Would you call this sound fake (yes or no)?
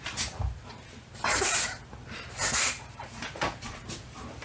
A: yes